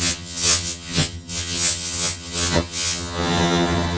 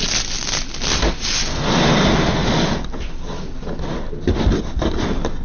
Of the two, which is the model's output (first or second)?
first